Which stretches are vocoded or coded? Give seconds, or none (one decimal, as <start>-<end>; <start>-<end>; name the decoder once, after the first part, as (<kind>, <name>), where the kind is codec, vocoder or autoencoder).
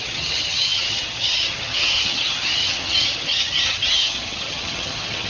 0.0-5.3 (vocoder, HiFi-GAN)